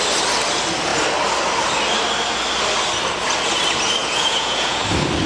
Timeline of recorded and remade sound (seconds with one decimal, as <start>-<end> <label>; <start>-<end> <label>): 0.0-4.0 recorded; 4.0-4.8 remade; 4.8-5.3 recorded